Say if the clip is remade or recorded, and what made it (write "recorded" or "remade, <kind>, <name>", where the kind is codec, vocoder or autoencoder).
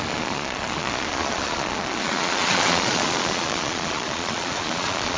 remade, vocoder, Vocos